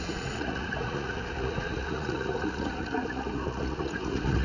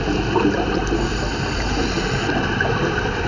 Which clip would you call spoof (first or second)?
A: first